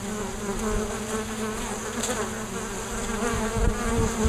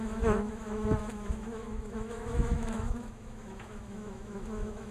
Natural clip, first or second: first